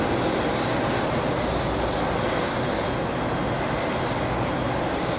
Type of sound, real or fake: real